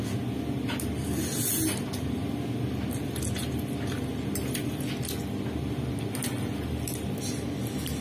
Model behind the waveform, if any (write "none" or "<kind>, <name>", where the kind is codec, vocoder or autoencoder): none